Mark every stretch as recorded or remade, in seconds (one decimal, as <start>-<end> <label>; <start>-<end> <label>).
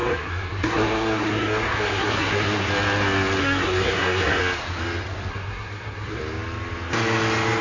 0.0-2.7 remade; 2.7-3.4 recorded; 3.4-4.4 remade; 4.4-5.3 recorded; 5.3-6.2 remade; 6.2-7.6 recorded